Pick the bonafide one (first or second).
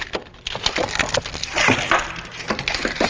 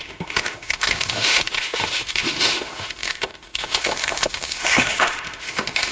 first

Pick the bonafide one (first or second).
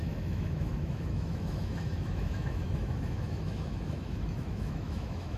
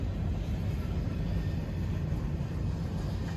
second